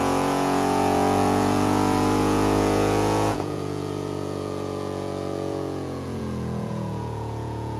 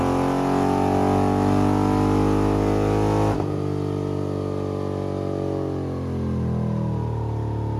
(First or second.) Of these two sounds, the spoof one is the first